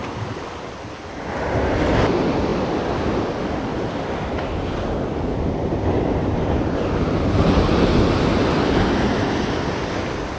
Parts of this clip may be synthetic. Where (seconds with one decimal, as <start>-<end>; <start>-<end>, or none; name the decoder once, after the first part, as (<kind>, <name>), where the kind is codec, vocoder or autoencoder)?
none